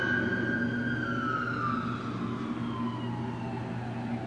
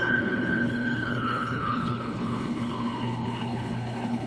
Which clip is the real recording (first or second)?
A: first